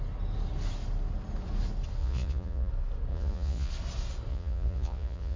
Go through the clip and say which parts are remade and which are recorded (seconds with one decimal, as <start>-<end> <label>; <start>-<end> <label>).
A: 0.0-2.0 recorded; 2.0-2.7 remade; 2.7-3.1 recorded; 3.1-3.7 remade; 3.7-4.3 recorded; 4.3-5.4 remade